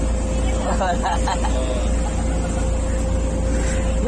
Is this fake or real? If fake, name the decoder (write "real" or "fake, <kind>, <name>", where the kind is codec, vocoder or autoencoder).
real